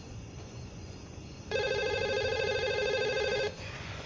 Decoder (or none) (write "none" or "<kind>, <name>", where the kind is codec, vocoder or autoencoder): vocoder, Vocos